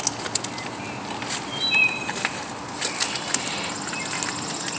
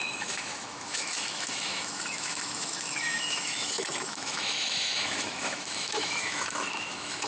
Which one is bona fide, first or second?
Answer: first